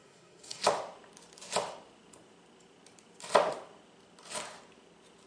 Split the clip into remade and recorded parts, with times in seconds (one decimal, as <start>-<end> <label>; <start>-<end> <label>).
0.0-0.6 remade; 0.6-5.3 recorded

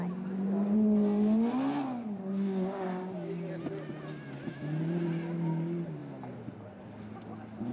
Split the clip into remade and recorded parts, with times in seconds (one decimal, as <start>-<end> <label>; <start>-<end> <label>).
0.0-7.7 recorded